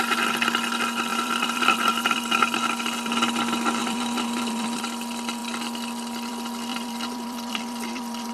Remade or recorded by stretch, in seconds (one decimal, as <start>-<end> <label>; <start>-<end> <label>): 0.0-1.1 recorded; 1.1-2.4 remade; 2.4-3.8 recorded; 3.8-4.8 remade; 4.8-6.7 recorded; 6.7-8.3 remade